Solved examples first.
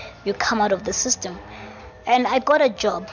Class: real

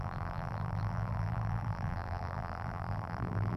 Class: fake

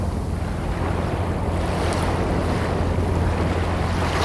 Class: real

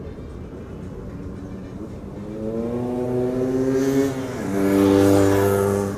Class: real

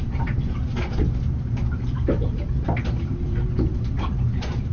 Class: fake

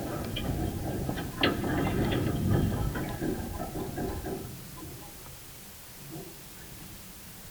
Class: real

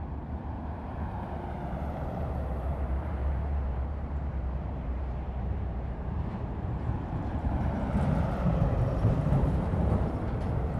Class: fake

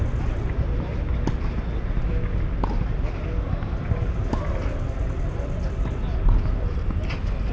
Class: real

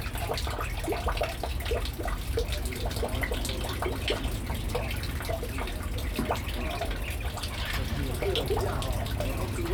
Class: real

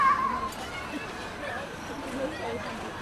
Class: real